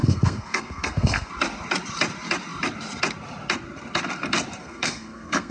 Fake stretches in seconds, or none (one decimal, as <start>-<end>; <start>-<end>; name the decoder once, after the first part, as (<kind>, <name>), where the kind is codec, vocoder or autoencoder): 0.0-1.3 (codec, SNAC); 4.6-5.5